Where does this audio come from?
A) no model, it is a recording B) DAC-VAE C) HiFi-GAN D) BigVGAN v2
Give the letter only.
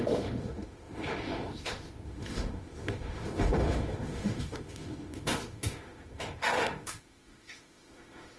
B